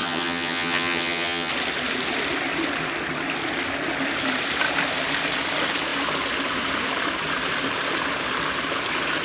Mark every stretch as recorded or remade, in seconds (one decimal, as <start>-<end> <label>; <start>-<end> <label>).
0.0-1.5 remade; 1.5-9.2 recorded